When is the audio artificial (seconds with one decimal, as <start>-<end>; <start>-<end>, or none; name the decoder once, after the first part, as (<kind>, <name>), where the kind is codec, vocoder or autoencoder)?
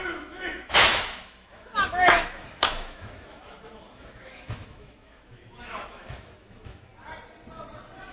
0.0-6.9 (autoencoder, DAC-VAE)